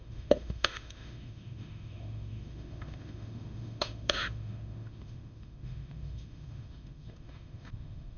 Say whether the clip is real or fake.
fake